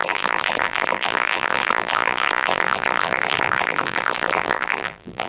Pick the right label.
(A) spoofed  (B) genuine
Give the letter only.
A